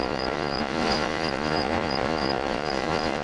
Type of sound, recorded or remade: remade